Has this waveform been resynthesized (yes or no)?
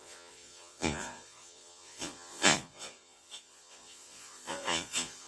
yes